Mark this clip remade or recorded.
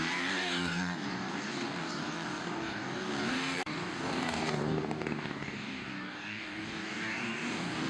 remade